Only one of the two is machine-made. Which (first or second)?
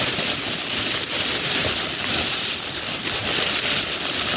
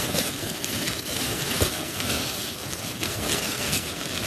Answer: second